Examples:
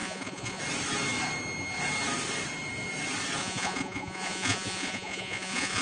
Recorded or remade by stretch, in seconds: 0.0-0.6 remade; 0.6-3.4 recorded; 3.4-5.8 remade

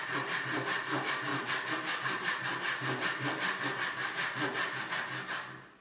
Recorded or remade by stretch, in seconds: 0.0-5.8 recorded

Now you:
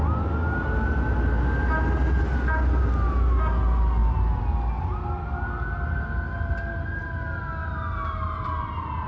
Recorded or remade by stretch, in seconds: 0.0-9.1 recorded